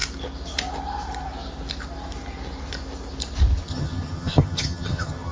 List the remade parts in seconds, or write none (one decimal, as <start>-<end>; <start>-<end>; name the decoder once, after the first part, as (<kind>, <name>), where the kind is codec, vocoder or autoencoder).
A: 3.7-5.3 (vocoder, HiFi-GAN)